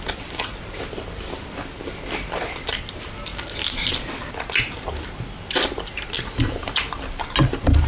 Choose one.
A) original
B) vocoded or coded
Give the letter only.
A